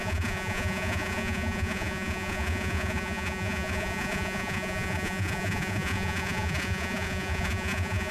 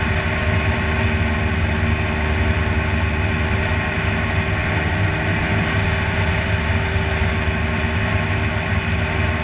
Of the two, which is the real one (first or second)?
second